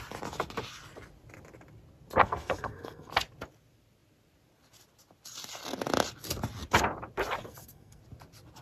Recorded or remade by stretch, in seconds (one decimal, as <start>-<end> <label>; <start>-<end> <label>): 0.0-2.2 recorded; 2.2-3.1 remade; 3.1-7.4 recorded; 7.4-8.0 remade; 8.0-8.6 recorded